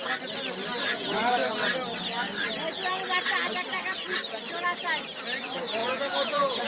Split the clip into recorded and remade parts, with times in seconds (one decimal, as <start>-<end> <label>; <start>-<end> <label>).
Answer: 0.0-5.8 recorded; 5.8-6.7 remade